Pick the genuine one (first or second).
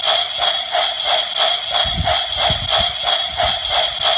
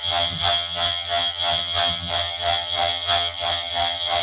first